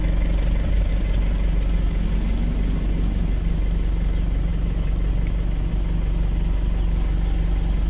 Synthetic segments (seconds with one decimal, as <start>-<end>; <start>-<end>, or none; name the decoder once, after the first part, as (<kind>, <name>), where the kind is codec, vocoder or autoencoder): none